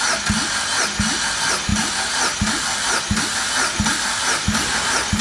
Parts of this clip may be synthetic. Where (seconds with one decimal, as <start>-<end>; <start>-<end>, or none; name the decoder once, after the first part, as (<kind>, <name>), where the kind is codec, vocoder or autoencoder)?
none